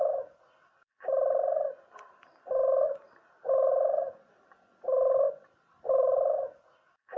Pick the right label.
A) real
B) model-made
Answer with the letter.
A